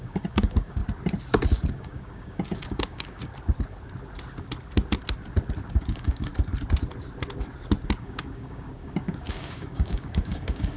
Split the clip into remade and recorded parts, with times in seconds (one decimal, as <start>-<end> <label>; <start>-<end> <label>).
0.0-0.8 remade; 0.8-1.7 recorded; 1.7-3.3 remade; 3.3-5.7 recorded; 5.7-6.3 remade; 6.3-8.0 recorded; 8.0-10.8 remade